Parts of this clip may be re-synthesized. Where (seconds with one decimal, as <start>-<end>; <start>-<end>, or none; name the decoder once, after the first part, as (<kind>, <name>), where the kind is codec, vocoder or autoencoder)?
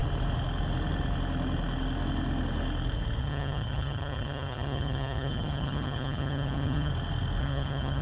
3.2-6.9 (vocoder, HiFi-GAN); 7.4-8.0